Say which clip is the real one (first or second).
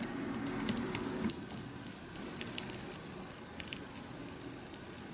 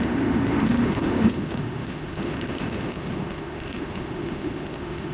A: first